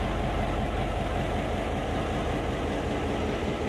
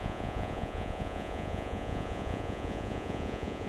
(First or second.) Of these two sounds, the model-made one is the second